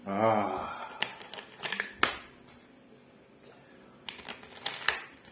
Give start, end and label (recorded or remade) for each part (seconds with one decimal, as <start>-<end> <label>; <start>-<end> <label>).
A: 0.0-5.3 recorded